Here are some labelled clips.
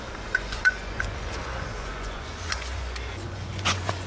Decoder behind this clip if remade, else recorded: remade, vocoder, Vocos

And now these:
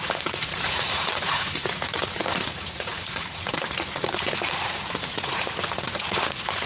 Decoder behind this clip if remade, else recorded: remade, vocoder, Vocos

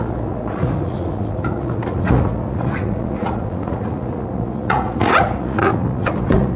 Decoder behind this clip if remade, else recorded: remade, vocoder, Vocos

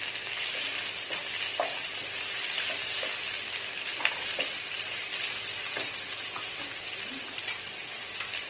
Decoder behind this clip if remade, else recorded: recorded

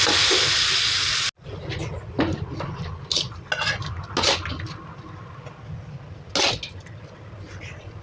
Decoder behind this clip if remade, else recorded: recorded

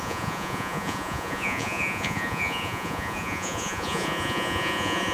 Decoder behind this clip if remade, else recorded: remade, vocoder, Vocos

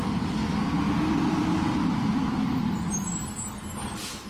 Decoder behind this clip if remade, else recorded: recorded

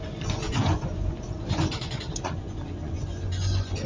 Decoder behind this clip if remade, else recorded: remade, vocoder, Vocos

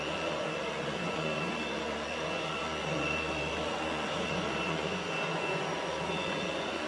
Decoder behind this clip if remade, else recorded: remade, vocoder, Vocos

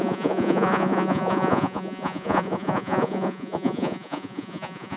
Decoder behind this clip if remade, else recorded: remade, vocoder, Vocos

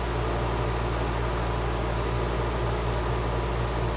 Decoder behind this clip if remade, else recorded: recorded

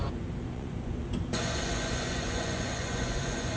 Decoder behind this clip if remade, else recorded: remade, vocoder, Vocos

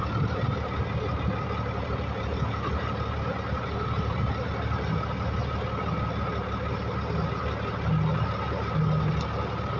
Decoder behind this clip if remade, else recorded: recorded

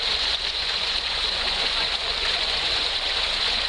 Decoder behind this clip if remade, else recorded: remade, vocoder, Vocos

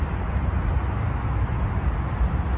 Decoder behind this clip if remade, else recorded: recorded